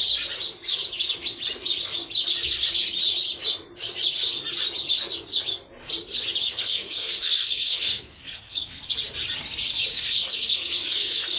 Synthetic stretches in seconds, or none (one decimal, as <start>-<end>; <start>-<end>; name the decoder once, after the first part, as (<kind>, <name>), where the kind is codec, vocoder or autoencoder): 6.4-8.9 (codec, SNAC); 9.9-11.4